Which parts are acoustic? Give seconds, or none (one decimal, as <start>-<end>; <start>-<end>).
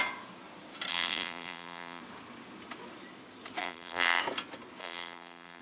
0.0-0.9; 2.0-3.6; 4.2-4.8